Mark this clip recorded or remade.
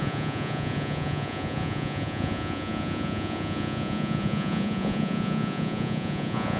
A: remade